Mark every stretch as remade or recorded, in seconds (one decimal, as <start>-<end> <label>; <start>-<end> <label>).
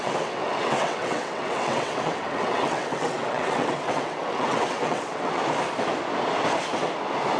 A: 0.0-5.4 remade; 5.4-7.4 recorded